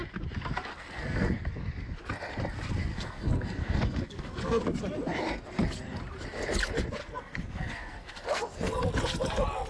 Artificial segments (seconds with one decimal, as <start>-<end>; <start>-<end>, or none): 0.7-1.4; 2.9-4.6; 7.0-8.7

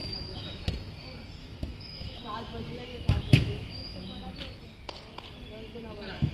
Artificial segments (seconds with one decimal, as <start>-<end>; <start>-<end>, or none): 0.0-0.6; 1.4-2.2; 2.9-4.4

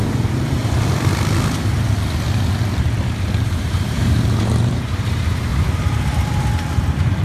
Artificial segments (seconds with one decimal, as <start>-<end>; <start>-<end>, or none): 0.0-0.6; 2.8-5.5; 6.8-7.2

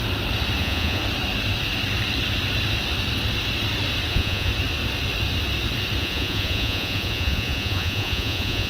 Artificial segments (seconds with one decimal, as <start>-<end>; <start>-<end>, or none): 0.6-1.0; 4.1-4.5; 6.0-8.7

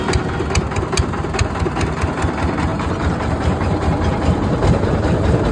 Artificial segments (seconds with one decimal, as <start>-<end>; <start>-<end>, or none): 2.7-5.5